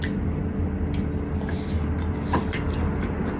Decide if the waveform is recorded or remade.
recorded